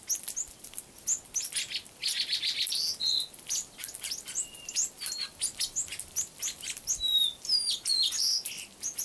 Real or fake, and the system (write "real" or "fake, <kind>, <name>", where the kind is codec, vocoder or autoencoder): real